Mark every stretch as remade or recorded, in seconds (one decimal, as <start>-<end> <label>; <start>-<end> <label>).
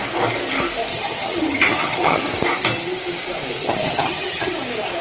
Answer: 0.0-0.9 recorded; 0.9-2.2 remade; 2.2-3.6 recorded; 3.6-4.5 remade; 4.5-5.0 recorded